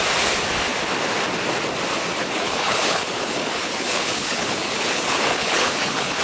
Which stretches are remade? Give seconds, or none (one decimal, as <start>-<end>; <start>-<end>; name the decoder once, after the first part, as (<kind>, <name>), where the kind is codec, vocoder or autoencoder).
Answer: 2.2-6.2 (codec, HILCodec)